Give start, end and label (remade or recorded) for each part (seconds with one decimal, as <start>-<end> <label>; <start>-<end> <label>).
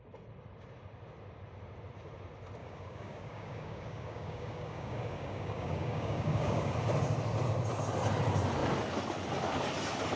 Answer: 0.0-2.6 recorded; 2.6-6.7 remade; 6.7-10.2 recorded